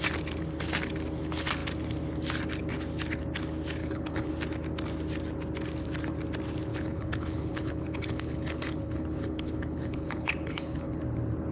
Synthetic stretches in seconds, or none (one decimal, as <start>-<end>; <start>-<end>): 3.8-4.3; 6.7-11.0